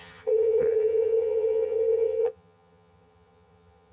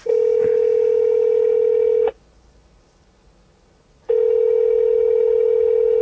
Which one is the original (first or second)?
second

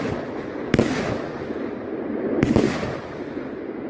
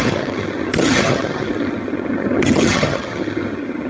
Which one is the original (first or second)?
first